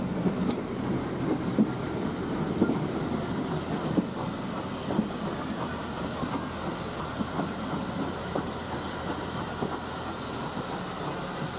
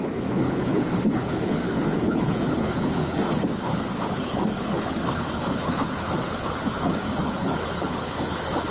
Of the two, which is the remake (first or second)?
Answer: second